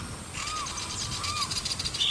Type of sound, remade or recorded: recorded